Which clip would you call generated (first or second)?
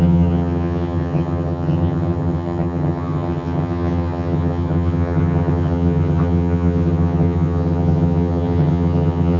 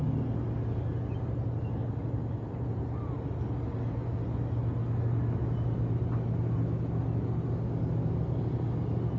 first